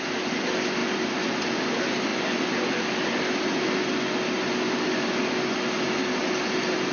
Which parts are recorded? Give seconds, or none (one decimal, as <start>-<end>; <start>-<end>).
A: 0.0-6.9